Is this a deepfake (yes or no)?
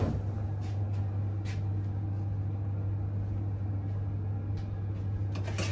no